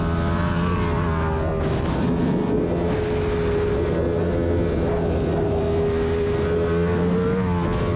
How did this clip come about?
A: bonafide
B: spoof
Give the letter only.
A